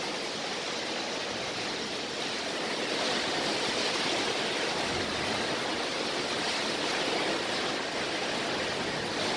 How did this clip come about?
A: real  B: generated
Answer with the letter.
A